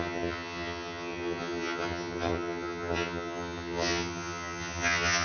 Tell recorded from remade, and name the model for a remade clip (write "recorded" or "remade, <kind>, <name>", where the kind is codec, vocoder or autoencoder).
remade, vocoder, HiFi-GAN